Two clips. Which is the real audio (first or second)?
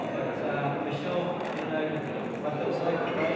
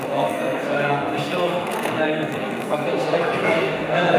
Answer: first